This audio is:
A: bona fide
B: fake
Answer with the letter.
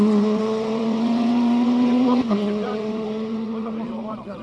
B